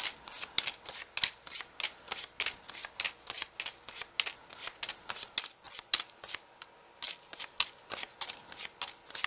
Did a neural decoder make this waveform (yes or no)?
no